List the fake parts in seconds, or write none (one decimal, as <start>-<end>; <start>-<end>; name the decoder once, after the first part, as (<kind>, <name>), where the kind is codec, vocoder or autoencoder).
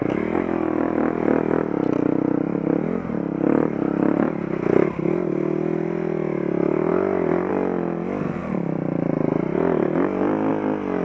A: 6.9-7.5 (vocoder, BigVGAN v2); 8.4-10.5